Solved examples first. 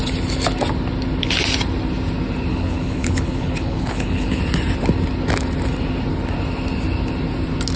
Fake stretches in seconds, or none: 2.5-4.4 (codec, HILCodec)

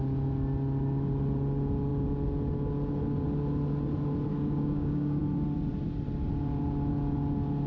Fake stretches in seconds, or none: 4.3-5.2 (codec, DAC)